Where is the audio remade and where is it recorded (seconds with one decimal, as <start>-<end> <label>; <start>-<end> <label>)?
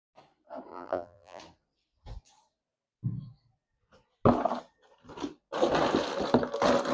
0.0-0.7 recorded; 0.7-1.4 remade; 1.4-6.9 recorded